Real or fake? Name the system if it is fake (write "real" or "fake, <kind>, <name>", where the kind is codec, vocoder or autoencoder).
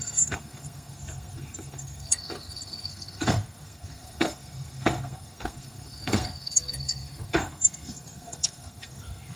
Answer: fake, codec, SNAC